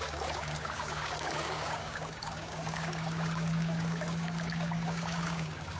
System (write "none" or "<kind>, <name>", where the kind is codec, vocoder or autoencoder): codec, DAC